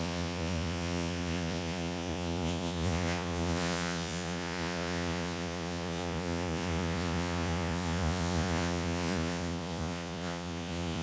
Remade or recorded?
remade